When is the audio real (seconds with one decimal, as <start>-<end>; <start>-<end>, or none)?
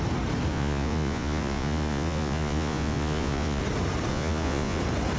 0.0-0.5; 3.6-4.1; 4.8-5.2